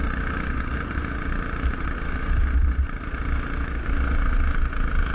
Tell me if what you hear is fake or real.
real